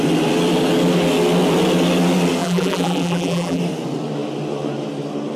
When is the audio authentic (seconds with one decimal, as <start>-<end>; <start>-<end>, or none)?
0.0-2.4; 3.6-5.4